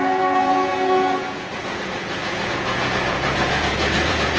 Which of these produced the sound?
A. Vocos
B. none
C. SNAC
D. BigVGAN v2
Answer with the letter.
A